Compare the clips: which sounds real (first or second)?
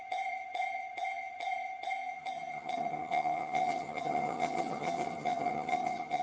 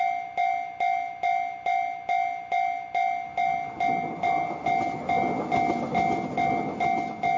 second